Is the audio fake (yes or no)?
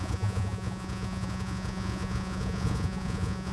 yes